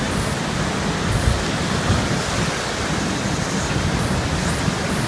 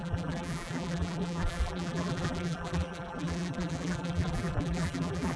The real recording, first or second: first